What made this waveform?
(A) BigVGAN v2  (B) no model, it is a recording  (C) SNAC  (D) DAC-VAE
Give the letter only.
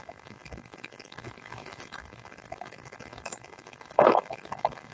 D